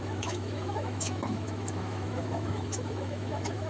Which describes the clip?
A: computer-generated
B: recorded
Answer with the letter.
A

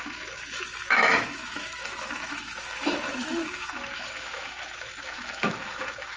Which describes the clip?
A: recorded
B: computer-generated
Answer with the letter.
B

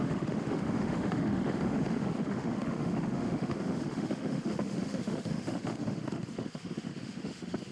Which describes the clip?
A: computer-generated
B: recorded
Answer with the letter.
A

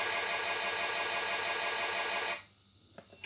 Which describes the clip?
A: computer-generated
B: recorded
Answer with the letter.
B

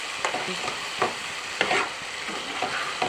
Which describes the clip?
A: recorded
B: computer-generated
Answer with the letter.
A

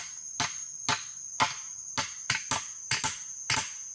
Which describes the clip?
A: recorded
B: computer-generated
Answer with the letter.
A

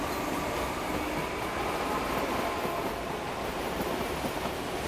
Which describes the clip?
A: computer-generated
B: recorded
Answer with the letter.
B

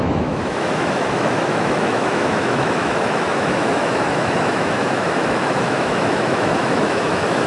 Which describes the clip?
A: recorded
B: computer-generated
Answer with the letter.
B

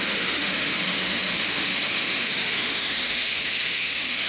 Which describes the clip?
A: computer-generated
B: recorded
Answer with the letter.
A